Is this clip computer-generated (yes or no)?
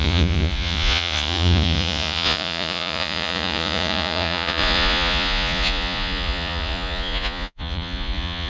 yes